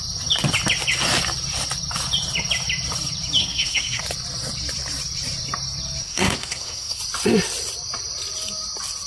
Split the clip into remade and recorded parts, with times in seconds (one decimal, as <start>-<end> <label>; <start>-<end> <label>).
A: 0.0-3.4 recorded; 3.4-4.0 remade; 4.0-6.0 recorded; 6.0-7.0 remade; 7.0-9.1 recorded